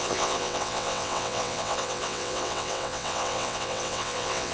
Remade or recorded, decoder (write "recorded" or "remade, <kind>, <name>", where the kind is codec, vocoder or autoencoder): remade, vocoder, WaveNeXt